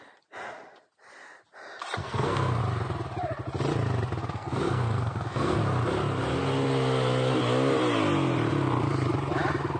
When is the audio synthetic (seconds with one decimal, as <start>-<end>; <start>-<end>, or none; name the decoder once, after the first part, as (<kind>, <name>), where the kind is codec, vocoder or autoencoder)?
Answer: 2.0-2.6 (codec, SNAC); 4.2-5.6